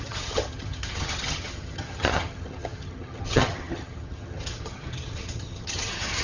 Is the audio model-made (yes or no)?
yes